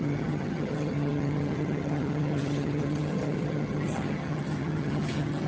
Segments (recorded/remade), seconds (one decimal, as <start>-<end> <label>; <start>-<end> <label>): 0.0-5.5 remade